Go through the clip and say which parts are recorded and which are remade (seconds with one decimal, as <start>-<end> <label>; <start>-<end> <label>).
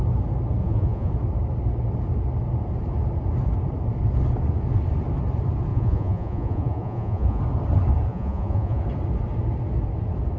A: 0.0-0.6 recorded; 0.6-1.1 remade; 1.1-5.7 recorded; 5.7-7.4 remade; 7.4-8.1 recorded; 8.1-8.8 remade; 8.8-10.4 recorded